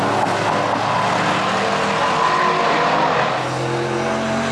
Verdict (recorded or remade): recorded